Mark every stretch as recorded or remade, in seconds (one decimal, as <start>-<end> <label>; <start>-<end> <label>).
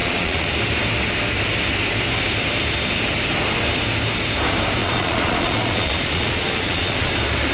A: 0.0-0.5 remade; 0.5-4.8 recorded; 4.8-7.1 remade; 7.1-7.5 recorded